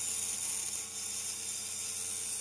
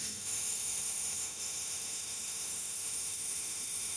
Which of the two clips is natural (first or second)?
first